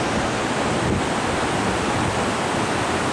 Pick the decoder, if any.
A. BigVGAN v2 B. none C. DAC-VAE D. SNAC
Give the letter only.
B